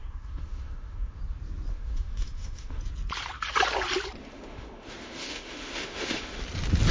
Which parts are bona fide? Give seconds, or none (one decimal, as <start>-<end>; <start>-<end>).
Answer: 1.2-1.7; 2.8-4.2; 6.4-6.9

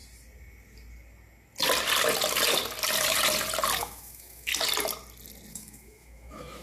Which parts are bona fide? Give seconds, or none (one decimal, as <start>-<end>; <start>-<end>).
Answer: 0.0-3.8; 4.5-5.5

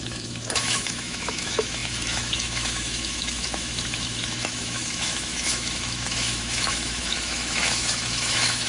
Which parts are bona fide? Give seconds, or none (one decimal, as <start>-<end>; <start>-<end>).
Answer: none

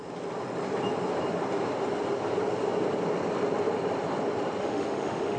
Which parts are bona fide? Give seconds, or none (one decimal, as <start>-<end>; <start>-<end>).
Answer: 0.0-4.6

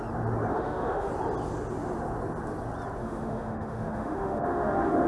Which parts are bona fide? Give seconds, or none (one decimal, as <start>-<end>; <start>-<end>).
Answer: 0.0-0.5; 1.1-3.0

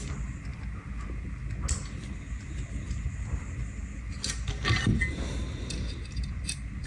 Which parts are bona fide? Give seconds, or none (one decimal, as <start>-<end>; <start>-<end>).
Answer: 0.0-6.9

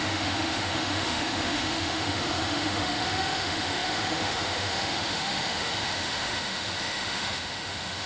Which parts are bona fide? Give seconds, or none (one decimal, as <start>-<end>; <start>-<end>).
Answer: none